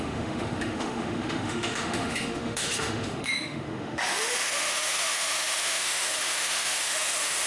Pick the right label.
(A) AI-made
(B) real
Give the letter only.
A